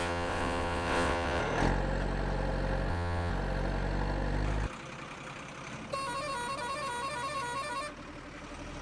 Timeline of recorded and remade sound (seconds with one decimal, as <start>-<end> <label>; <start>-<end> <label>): 0.0-1.4 remade; 1.4-2.9 recorded; 2.9-3.3 remade; 3.3-8.8 recorded